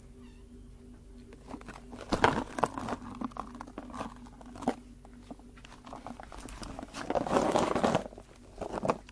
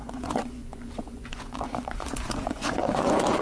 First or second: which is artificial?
second